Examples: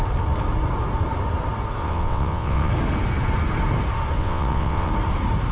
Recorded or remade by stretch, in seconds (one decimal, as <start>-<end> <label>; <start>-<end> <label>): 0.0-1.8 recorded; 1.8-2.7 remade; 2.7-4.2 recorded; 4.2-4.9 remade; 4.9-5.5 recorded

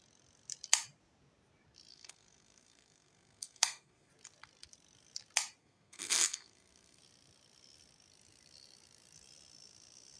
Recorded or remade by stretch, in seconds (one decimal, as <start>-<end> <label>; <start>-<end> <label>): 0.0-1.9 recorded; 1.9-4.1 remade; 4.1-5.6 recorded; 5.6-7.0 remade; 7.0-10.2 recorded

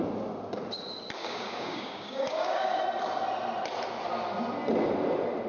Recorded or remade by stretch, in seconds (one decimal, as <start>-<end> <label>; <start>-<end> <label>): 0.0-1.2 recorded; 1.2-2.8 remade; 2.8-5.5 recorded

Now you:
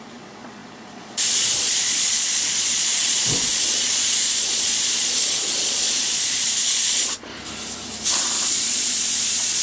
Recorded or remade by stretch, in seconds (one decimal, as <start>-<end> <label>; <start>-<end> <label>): 0.0-7.3 remade; 7.3-8.2 recorded; 8.2-9.6 remade

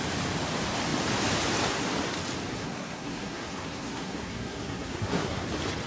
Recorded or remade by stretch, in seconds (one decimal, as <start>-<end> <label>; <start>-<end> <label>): 0.0-2.5 recorded; 2.5-5.4 remade; 5.4-5.9 recorded

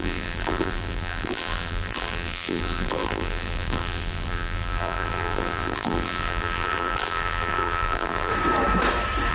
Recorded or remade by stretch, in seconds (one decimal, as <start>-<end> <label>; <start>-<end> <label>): 0.0-8.3 remade; 8.3-9.3 recorded

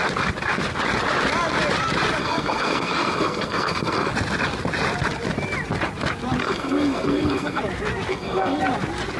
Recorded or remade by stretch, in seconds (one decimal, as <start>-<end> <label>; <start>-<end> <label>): 0.0-2.2 recorded; 2.2-4.1 remade; 4.1-6.4 recorded; 6.4-7.6 remade; 7.6-8.1 recorded; 8.1-8.6 remade; 8.6-9.2 recorded